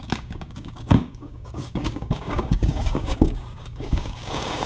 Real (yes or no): no